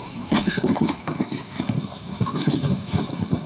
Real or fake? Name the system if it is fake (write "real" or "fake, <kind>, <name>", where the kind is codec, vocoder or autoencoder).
fake, codec, SNAC